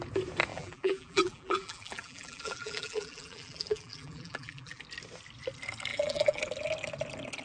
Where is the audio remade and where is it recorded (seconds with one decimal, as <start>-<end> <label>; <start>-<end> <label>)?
0.0-0.5 recorded; 0.5-4.8 remade; 4.8-5.9 recorded; 5.9-6.4 remade; 6.4-7.4 recorded